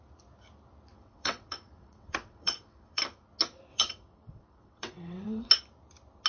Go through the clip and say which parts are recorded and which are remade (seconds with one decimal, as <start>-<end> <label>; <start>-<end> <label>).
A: 0.0-0.9 recorded; 0.9-3.0 remade; 3.0-3.7 recorded; 3.7-5.5 remade; 5.5-6.3 recorded